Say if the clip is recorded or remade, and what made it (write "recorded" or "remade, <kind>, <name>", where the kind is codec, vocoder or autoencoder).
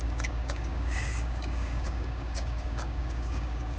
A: remade, codec, DAC